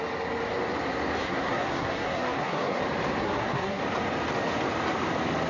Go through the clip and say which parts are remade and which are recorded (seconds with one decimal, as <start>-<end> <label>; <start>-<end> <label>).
0.0-1.2 recorded; 1.2-2.8 remade; 2.8-3.2 recorded; 3.2-3.8 remade; 3.8-5.5 recorded